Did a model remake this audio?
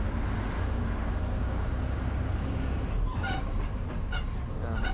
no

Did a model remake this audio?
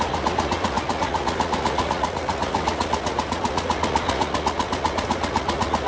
yes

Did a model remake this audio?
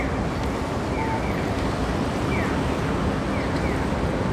no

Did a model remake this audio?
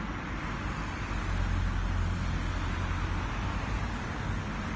no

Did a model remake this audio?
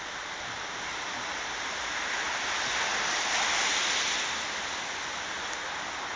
no